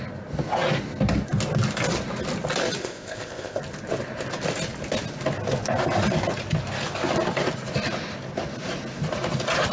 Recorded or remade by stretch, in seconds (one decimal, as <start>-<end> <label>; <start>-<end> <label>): 0.0-2.8 recorded; 2.8-3.6 remade; 3.6-9.7 recorded